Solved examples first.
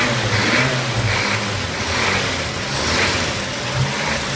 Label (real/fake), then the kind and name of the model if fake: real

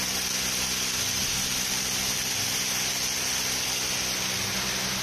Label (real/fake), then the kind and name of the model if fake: real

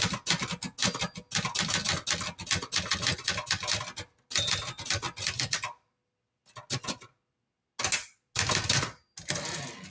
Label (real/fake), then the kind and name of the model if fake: real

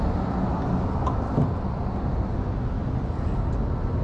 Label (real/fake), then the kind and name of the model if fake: real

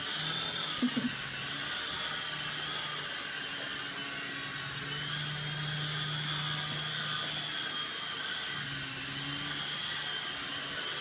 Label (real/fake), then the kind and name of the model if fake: real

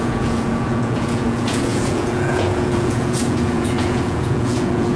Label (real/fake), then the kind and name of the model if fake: fake, vocoder, Vocos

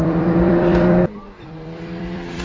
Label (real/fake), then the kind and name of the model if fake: fake, vocoder, BigVGAN v2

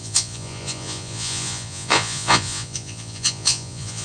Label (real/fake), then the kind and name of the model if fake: fake, vocoder, Vocos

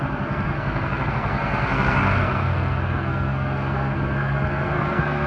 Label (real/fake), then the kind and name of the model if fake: fake, codec, SNAC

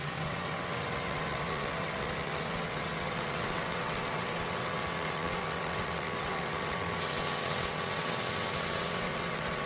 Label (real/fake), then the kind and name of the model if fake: fake, vocoder, WaveNeXt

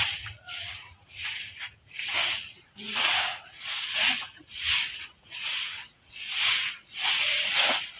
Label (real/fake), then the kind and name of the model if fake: fake, vocoder, Vocos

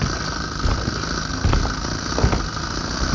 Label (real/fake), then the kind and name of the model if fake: real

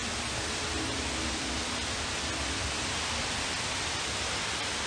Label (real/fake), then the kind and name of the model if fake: real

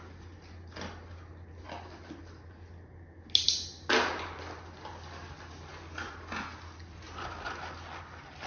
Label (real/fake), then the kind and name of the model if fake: real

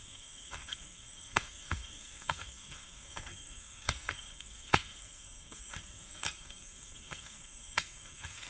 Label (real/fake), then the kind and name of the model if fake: fake, codec, SNAC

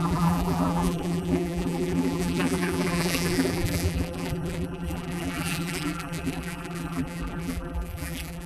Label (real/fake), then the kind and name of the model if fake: fake, vocoder, BigVGAN v2